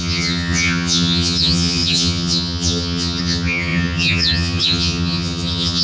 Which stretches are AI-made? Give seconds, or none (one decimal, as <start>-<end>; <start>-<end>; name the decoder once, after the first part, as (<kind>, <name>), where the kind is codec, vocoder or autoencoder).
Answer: 0.0-5.8 (vocoder, HiFi-GAN)

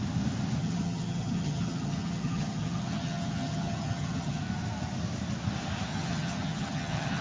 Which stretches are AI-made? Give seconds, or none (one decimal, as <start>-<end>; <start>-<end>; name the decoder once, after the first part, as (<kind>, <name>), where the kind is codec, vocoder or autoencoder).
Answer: 0.6-4.4 (vocoder, HiFi-GAN); 5.9-7.2